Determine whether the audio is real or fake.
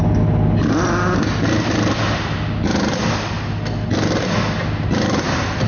real